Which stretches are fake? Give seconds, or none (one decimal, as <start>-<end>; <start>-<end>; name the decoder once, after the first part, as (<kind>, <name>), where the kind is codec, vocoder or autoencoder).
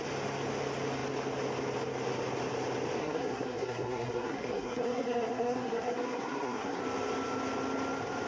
3.0-6.8 (codec, SNAC)